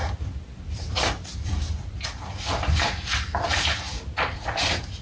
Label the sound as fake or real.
real